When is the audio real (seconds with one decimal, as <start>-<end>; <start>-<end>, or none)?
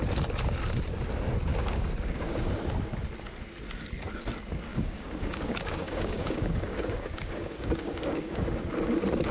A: 0.0-1.5; 2.5-4.7; 8.7-9.3